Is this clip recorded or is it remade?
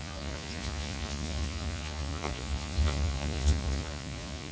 remade